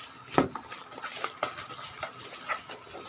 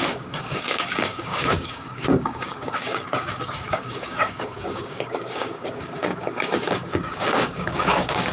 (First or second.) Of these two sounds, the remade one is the second